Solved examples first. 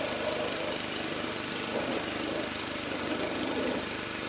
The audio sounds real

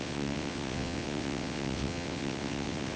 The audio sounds fake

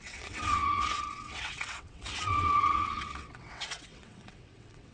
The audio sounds fake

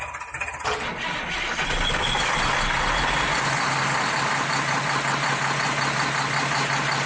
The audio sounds real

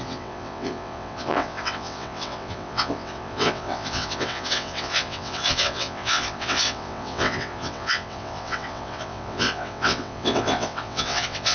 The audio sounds fake